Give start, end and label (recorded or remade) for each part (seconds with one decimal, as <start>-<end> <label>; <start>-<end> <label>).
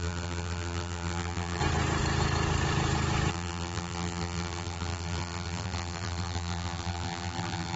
0.0-1.6 remade; 1.6-3.3 recorded; 3.3-7.8 remade